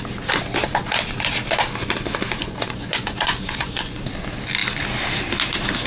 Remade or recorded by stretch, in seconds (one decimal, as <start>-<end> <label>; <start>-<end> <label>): 0.0-2.4 recorded; 2.4-4.0 remade; 4.0-5.9 recorded